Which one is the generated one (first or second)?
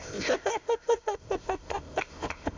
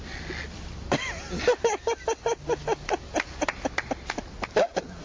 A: first